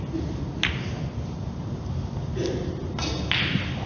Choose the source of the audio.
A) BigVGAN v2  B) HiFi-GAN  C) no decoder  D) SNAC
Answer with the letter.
C